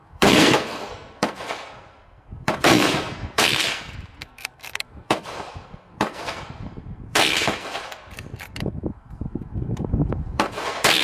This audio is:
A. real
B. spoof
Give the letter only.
B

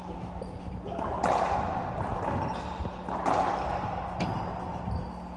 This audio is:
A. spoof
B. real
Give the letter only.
B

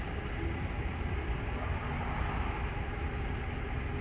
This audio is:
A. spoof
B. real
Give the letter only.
B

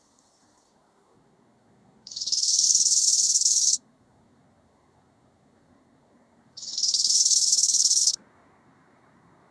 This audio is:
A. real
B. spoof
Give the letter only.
B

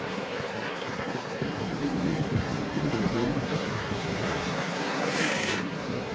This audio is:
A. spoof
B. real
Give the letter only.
A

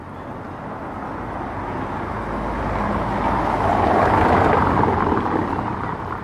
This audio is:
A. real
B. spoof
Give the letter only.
A